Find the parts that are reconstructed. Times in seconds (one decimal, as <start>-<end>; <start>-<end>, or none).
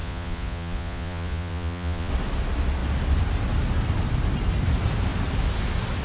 0.0-2.1